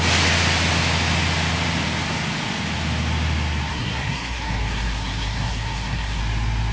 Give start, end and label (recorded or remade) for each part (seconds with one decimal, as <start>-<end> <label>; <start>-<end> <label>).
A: 0.0-3.7 recorded; 3.7-6.2 remade; 6.2-6.7 recorded